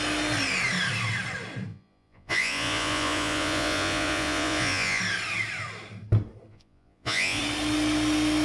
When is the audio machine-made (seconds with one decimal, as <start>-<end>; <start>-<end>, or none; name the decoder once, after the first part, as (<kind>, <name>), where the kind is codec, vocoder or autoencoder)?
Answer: 1.7-5.0 (vocoder, Vocos); 6.5-7.4